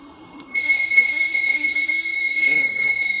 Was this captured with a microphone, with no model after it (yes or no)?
no